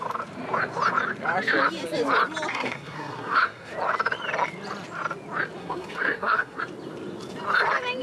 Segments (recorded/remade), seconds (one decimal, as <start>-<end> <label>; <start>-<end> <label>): 0.0-2.5 recorded; 2.5-3.7 remade; 3.7-5.6 recorded; 5.6-6.6 remade; 6.6-8.0 recorded